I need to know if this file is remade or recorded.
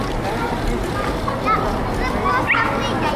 recorded